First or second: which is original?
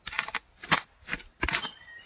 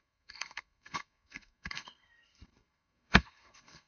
first